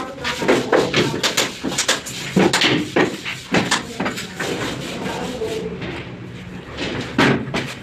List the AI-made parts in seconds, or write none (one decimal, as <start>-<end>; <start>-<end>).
none